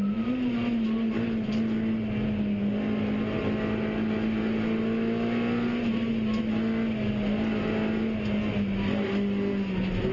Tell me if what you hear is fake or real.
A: real